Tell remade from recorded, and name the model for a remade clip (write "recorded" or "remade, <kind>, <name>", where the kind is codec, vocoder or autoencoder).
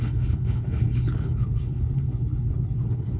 remade, codec, HILCodec